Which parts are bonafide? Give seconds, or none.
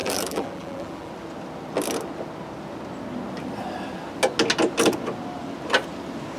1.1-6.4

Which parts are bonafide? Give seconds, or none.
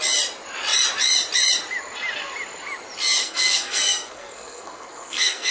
0.0-3.2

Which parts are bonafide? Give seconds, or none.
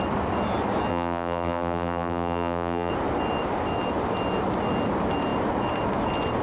0.0-0.9; 2.9-6.4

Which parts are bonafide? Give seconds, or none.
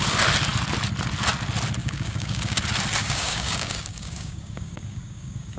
0.0-1.8; 2.6-3.0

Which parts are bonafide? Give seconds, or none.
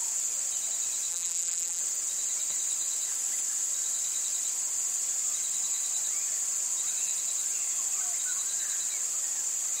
0.0-1.1; 1.8-9.8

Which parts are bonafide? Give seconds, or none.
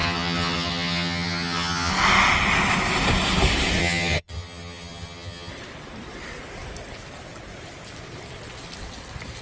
1.9-3.8; 5.5-9.4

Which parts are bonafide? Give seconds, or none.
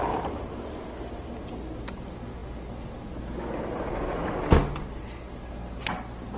0.0-6.4